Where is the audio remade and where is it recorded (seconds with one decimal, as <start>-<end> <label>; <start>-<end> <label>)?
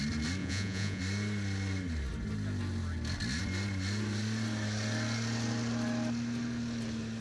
0.0-0.4 recorded; 0.4-1.0 remade; 1.0-7.2 recorded